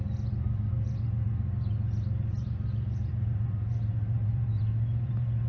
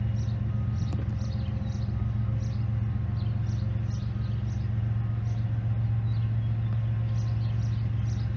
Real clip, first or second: second